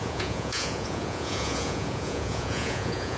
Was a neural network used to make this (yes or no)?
yes